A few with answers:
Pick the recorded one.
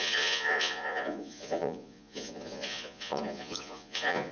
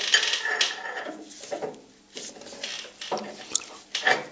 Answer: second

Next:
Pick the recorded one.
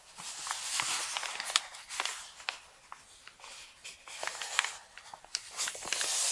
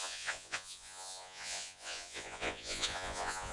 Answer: first